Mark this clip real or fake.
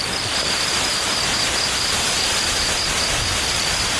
real